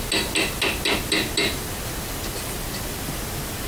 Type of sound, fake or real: real